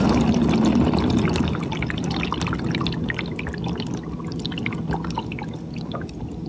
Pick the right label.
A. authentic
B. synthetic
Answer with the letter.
A